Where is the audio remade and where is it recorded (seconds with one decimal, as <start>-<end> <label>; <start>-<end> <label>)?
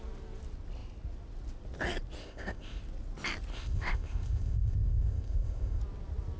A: 0.0-2.2 recorded; 2.2-2.8 remade; 2.8-3.5 recorded; 3.5-5.8 remade; 5.8-6.4 recorded